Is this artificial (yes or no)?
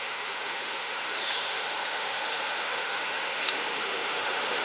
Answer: yes